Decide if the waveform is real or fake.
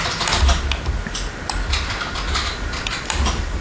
real